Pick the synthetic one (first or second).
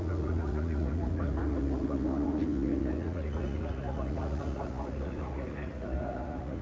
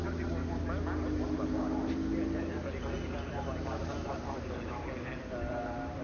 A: first